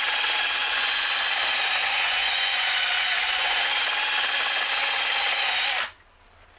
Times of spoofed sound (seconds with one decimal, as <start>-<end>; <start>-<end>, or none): 0.6-1.1; 1.8-3.6